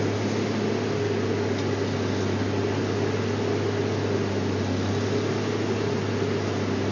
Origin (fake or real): real